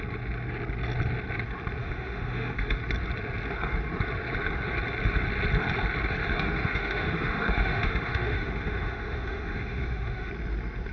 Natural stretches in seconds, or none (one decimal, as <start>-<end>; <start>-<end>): 0.0-1.8; 2.8-6.3; 10.3-10.9